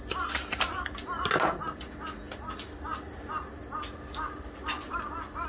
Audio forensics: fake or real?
real